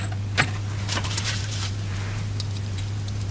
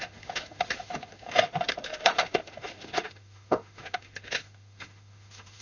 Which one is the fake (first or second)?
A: second